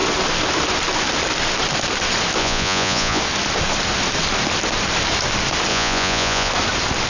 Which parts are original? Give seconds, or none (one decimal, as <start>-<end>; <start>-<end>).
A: 0.0-2.4; 3.2-5.7; 6.5-7.1